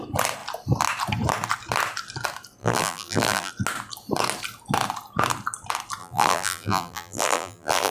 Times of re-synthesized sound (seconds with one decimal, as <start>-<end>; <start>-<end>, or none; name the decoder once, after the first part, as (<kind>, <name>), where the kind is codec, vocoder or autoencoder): 2.6-3.5 (vocoder, BigVGAN v2); 6.0-7.9